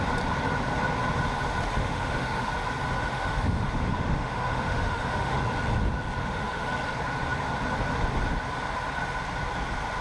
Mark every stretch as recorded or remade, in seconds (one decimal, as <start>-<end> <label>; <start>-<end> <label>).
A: 0.0-1.8 recorded; 1.8-2.5 remade; 2.5-3.0 recorded; 3.0-5.4 remade; 5.4-6.2 recorded; 6.2-6.7 remade; 6.7-10.0 recorded